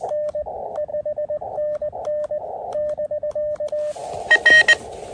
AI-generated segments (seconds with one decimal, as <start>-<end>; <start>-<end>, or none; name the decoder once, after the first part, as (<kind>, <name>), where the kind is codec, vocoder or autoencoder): none